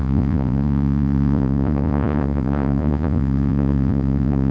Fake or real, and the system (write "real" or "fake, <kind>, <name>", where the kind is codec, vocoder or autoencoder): fake, vocoder, Vocos